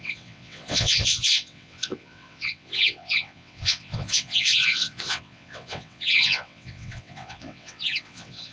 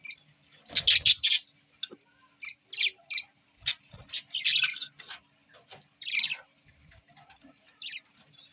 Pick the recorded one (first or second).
second